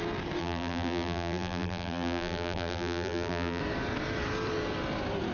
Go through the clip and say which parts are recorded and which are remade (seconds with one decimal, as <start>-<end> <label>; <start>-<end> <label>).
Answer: 0.0-0.4 recorded; 0.4-3.6 remade; 3.6-5.3 recorded